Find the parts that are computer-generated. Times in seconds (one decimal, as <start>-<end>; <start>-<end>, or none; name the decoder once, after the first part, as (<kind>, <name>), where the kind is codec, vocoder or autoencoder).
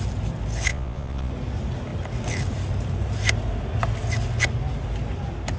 0.7-1.3 (vocoder, Vocos)